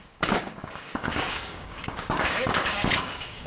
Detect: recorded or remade remade